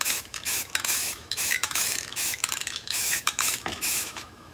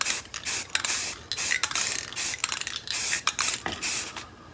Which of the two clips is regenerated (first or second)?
first